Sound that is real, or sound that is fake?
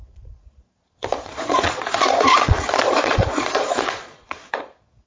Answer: fake